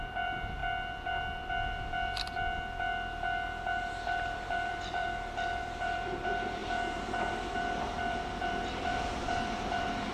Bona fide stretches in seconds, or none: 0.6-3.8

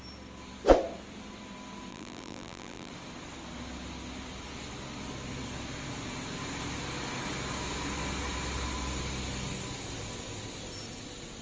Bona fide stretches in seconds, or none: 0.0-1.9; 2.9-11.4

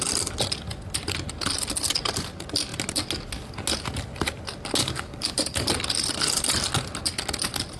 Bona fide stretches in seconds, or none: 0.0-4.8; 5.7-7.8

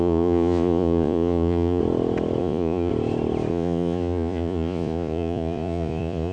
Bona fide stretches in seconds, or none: 1.8-2.4; 2.9-3.5